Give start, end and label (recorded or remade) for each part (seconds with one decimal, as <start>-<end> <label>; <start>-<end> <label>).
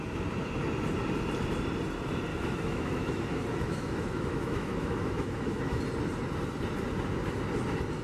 0.0-2.3 recorded; 2.3-5.8 remade; 5.8-8.0 recorded